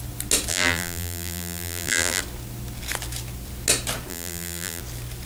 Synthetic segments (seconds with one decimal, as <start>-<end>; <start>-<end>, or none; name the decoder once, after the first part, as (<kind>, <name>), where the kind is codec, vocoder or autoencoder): 0.5-2.2 (vocoder, BigVGAN v2); 4.1-4.8

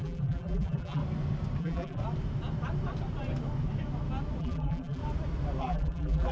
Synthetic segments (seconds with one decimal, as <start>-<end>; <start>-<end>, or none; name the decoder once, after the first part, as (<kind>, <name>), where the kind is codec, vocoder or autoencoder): 0.0-1.0 (vocoder, BigVGAN v2); 1.6-2.0; 4.4-5.0; 5.6-6.3

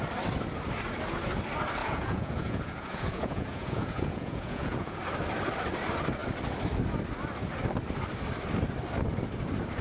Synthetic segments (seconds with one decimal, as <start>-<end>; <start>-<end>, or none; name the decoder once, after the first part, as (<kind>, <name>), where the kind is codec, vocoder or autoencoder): 1.8-5.0 (vocoder, Vocos)

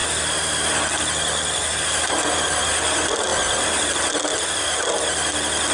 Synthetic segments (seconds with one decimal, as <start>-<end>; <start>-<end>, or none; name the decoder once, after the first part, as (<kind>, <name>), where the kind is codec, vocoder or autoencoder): none

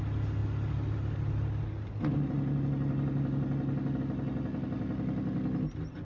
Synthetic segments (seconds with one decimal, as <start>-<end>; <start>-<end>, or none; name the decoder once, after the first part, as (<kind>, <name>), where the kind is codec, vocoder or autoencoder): none